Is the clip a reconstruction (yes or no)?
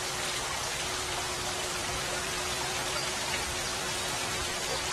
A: yes